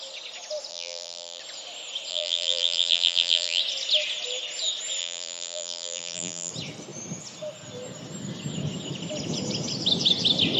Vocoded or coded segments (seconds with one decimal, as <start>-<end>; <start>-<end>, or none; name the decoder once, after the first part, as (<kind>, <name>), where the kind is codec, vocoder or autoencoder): 0.7-1.4 (vocoder, BigVGAN v2); 2.1-3.6; 5.0-6.5